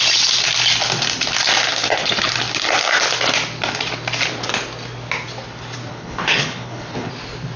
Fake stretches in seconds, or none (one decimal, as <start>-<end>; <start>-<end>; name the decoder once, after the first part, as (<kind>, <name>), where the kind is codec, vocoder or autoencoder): 5.9-7.1 (codec, HILCodec)